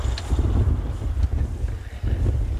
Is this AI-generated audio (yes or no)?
no